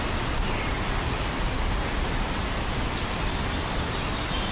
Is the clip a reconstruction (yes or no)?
no